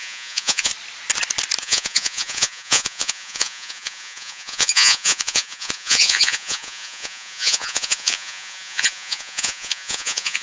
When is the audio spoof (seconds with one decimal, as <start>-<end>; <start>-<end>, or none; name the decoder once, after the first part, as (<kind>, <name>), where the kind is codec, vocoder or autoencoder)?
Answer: 0.0-0.7 (vocoder, Vocos); 1.6-10.4